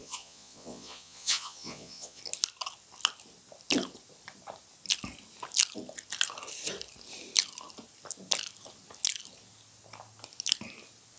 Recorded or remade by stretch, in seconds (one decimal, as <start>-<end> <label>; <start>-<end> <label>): 0.0-2.2 remade; 2.2-11.2 recorded